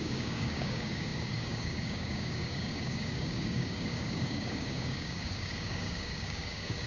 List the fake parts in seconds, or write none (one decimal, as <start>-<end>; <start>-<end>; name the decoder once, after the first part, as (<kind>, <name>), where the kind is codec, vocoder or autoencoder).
0.0-6.9 (codec, DAC)